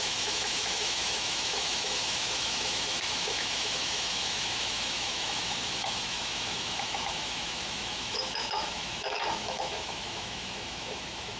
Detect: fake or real fake